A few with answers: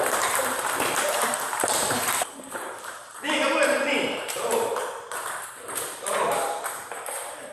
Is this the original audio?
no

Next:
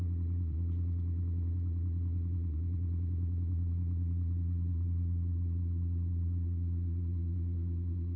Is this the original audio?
no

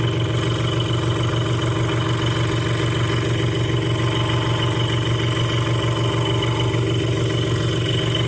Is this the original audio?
yes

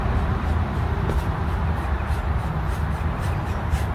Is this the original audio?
yes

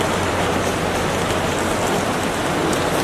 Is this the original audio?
yes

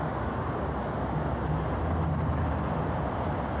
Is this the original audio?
yes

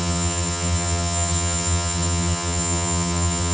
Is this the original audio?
no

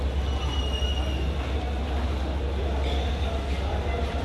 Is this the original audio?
yes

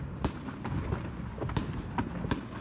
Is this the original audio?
yes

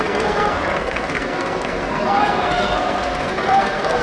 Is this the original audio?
no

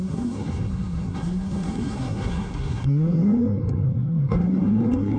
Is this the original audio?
no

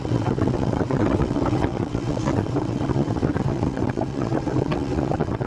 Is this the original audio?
no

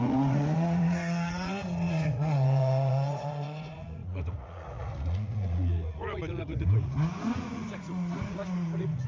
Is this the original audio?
no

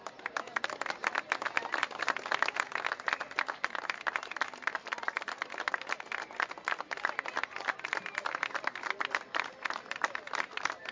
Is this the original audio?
yes